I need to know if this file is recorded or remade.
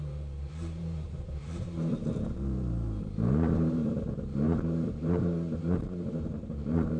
remade